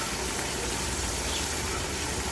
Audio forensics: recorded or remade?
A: recorded